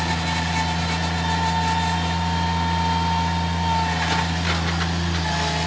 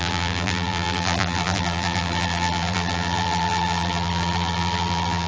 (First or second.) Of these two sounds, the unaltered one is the first